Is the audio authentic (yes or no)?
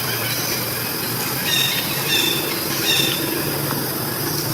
yes